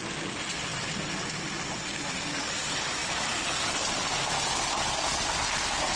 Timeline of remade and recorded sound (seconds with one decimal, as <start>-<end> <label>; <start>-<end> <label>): 0.0-6.0 recorded